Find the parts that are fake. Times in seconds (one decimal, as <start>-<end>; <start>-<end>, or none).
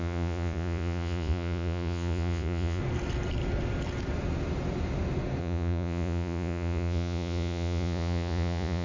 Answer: 0.0-2.8; 5.4-8.8